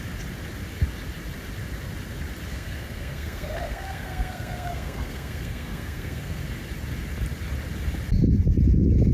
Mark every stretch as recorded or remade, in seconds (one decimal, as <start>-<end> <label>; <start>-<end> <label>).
0.0-2.5 recorded; 2.5-6.4 remade; 6.4-9.1 recorded